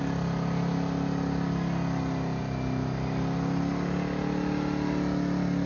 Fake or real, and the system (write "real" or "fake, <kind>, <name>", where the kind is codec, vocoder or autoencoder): real